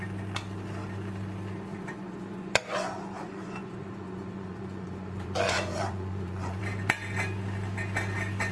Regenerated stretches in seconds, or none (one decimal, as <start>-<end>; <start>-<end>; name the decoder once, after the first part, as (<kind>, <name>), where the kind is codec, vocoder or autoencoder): 1.7-6.6 (vocoder, Vocos)